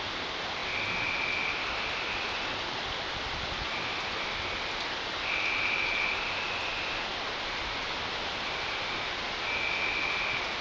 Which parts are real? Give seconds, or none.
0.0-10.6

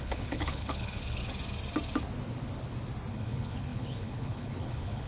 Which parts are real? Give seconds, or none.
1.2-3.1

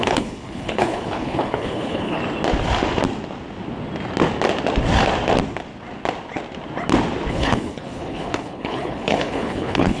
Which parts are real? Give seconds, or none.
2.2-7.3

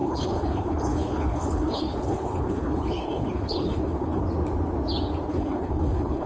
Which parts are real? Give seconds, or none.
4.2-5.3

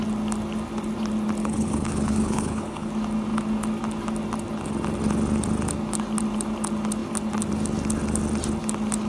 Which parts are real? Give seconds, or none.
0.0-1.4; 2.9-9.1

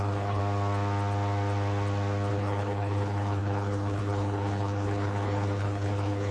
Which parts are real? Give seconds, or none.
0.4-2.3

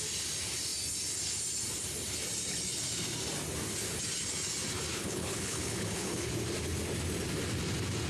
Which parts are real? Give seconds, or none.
0.0-4.9; 6.3-8.1

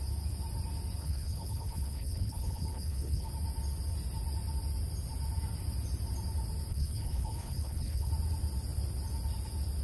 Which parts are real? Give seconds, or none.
0.0-1.0; 3.3-6.7; 8.1-9.8